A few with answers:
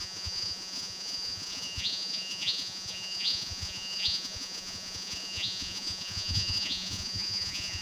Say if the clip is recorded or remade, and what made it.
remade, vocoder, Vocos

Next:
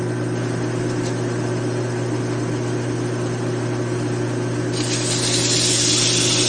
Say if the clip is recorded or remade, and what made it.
recorded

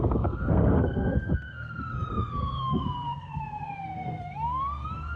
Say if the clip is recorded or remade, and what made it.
remade, codec, SNAC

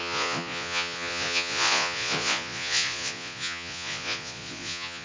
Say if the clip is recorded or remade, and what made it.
remade, vocoder, Vocos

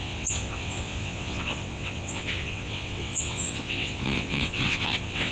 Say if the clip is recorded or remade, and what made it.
remade, vocoder, WaveNeXt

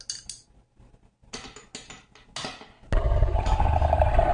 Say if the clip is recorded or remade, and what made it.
recorded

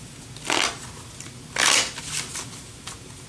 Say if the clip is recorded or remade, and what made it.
recorded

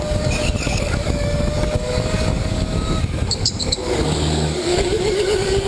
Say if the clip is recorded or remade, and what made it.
remade, codec, DAC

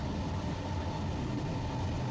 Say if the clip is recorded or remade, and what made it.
recorded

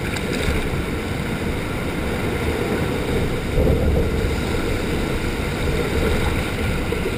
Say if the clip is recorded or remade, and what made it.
recorded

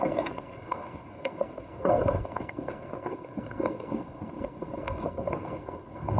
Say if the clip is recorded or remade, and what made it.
remade, codec, SNAC